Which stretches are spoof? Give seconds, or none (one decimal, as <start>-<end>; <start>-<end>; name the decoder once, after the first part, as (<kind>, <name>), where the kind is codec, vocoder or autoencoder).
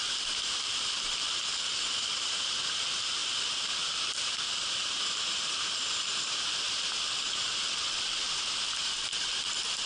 0.0-1.8 (vocoder, BigVGAN v2); 3.2-7.5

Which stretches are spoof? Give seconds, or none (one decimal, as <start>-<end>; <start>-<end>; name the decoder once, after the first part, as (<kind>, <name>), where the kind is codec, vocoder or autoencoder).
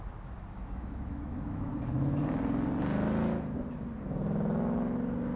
0.6-1.7 (autoencoder, DAC-VAE)